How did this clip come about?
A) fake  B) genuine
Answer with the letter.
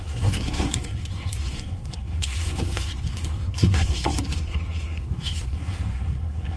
A